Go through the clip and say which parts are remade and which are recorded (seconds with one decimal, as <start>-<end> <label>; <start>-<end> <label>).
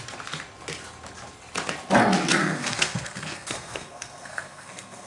0.0-2.4 recorded; 2.4-5.1 remade